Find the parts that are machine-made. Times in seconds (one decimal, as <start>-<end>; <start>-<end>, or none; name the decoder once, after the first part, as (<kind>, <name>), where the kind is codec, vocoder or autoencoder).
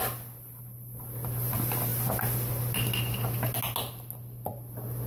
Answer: none